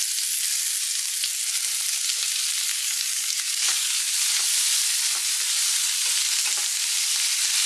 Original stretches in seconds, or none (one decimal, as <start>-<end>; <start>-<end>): 0.0-2.7; 4.0-7.7